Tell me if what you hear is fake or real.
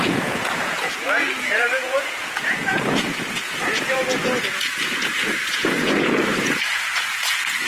fake